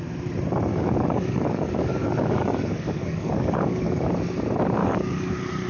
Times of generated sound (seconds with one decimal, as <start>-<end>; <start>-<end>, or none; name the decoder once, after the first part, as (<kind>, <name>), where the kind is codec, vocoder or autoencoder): 0.7-4.1 (codec, DAC); 4.8-5.3